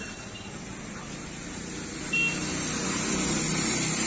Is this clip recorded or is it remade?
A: recorded